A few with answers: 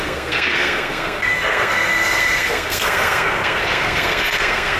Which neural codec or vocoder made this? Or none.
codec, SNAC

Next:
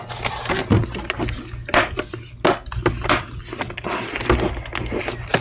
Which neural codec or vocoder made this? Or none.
none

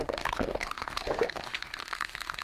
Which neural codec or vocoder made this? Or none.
autoencoder, DAC-VAE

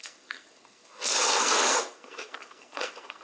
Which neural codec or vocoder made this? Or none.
codec, SNAC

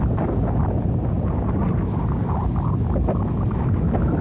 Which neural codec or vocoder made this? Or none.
none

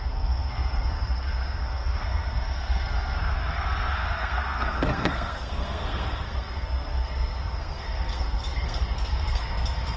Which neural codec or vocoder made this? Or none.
codec, SNAC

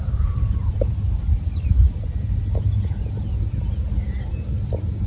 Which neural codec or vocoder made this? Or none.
none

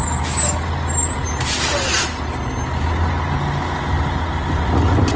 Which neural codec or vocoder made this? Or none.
none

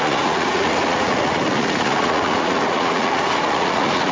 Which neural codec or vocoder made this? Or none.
vocoder, Vocos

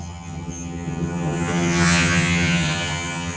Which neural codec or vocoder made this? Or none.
vocoder, HiFi-GAN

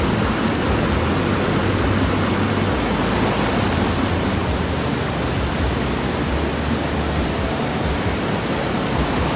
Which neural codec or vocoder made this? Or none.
none